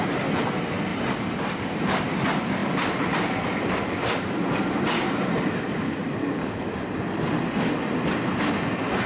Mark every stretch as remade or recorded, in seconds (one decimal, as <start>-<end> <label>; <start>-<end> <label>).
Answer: 0.0-0.9 recorded; 0.9-1.6 remade; 1.6-2.6 recorded; 2.6-4.1 remade; 4.1-6.0 recorded; 6.0-6.7 remade; 6.7-9.1 recorded